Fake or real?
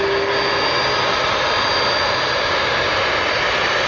real